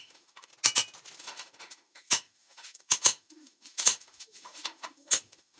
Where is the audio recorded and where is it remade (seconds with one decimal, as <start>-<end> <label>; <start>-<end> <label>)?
0.0-0.5 remade; 0.5-1.2 recorded; 1.2-5.6 remade